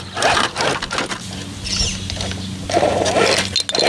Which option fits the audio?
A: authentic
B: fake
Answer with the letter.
A